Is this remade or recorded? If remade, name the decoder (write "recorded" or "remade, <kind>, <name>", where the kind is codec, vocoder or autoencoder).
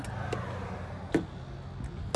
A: recorded